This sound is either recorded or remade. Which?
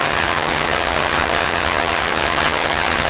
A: remade